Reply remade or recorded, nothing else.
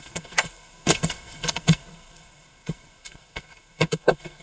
remade